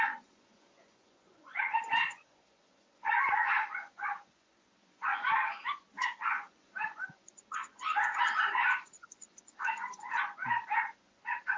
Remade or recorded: remade